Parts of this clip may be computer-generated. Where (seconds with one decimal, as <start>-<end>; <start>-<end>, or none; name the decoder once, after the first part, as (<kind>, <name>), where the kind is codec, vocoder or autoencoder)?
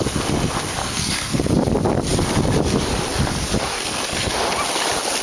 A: 0.8-1.4 (codec, SNAC); 3.7-4.3